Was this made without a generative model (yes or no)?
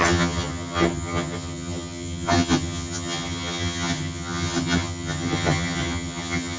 no